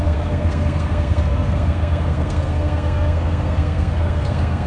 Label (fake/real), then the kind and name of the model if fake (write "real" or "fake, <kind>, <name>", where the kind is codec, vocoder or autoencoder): fake, codec, SNAC